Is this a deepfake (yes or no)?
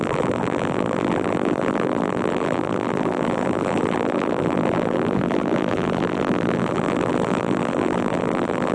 yes